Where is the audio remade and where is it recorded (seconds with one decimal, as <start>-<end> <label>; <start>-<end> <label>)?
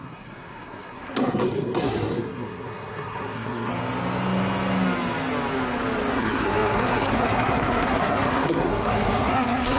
0.0-3.7 remade; 3.7-6.1 recorded; 6.1-9.8 remade